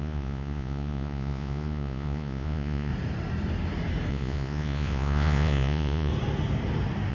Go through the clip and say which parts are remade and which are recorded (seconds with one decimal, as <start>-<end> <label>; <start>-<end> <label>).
0.0-2.9 remade; 2.9-4.1 recorded; 4.1-6.1 remade; 6.1-7.1 recorded